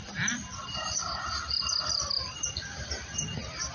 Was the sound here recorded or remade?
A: remade